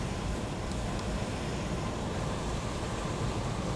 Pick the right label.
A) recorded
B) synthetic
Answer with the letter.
B